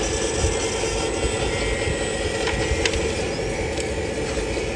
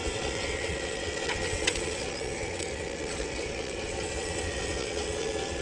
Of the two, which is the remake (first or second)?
second